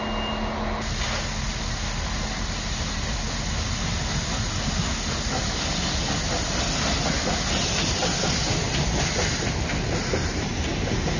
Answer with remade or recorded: recorded